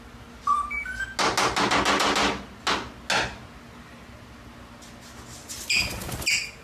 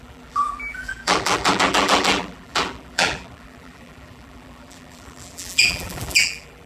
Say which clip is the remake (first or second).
second